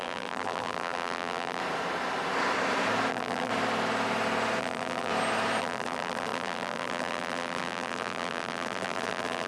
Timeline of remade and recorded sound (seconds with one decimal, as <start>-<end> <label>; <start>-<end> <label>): 0.0-1.6 remade; 1.6-3.1 recorded; 3.1-3.5 remade; 3.5-4.6 recorded; 4.6-5.1 remade; 5.1-5.6 recorded; 5.6-9.5 remade